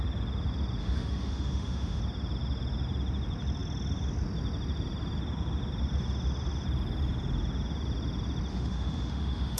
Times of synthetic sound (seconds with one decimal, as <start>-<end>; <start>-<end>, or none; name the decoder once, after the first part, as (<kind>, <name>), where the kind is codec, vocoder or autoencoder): 0.8-2.0 (autoencoder, DAC-VAE); 8.5-9.6